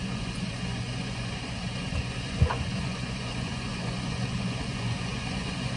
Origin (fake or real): fake